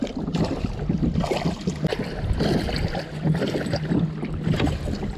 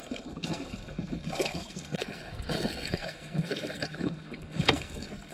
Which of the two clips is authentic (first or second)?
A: first